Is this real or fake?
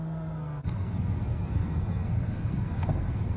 fake